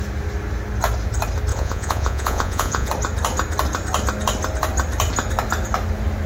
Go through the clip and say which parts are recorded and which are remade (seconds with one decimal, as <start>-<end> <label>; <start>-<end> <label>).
0.0-1.5 recorded; 1.5-2.9 remade; 2.9-6.3 recorded